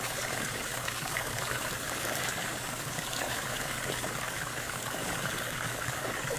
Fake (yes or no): yes